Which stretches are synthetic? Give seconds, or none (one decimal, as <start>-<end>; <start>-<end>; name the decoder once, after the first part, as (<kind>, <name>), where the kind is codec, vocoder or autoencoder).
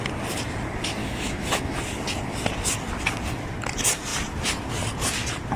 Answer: 1.0-1.8 (autoencoder, DAC-VAE)